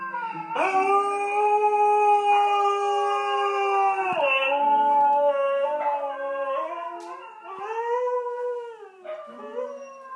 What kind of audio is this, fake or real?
real